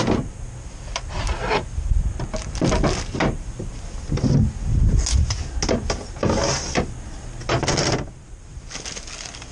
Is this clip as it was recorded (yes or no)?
yes